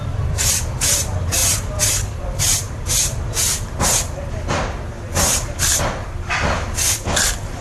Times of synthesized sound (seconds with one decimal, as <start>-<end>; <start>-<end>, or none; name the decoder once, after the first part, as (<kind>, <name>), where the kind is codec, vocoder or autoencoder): 0.0-7.6 (vocoder, BigVGAN v2)